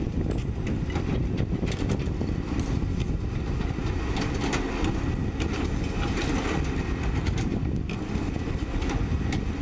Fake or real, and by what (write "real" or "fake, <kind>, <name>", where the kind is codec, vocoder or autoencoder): real